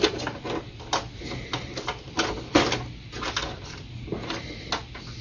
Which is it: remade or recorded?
recorded